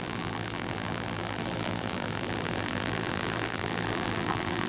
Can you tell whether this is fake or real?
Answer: fake